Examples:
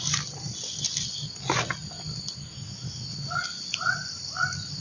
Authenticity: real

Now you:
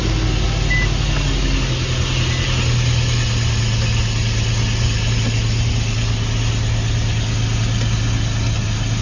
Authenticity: real